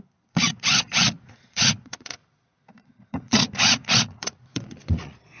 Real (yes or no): no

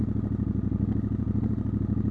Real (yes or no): yes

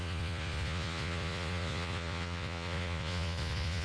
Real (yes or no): no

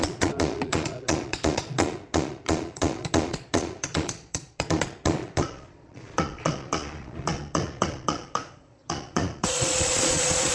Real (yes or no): no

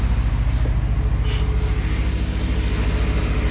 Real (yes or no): yes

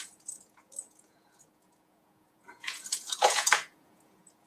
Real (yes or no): no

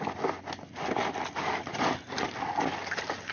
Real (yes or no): yes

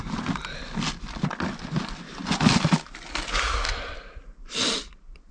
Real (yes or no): yes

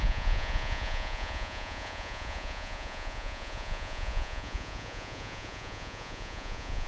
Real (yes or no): no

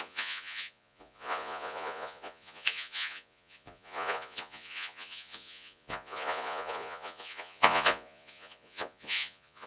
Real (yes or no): no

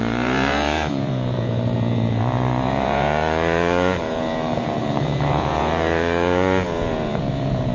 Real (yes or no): no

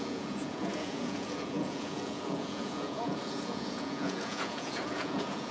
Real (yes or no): no